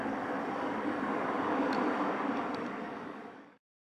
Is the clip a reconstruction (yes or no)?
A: yes